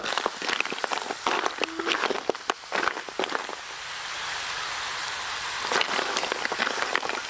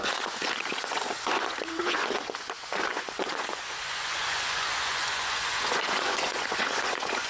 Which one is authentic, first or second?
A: first